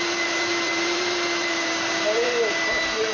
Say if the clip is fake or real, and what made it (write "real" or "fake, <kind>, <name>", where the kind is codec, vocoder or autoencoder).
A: fake, vocoder, BigVGAN v2